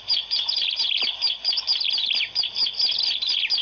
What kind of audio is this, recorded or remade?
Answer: recorded